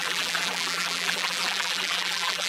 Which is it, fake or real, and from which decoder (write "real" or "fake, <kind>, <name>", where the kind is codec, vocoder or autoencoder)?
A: fake, vocoder, BigVGAN v2